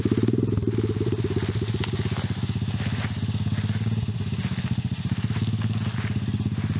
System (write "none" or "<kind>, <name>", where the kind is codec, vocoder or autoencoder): none